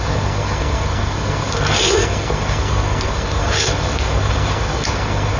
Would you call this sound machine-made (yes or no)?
yes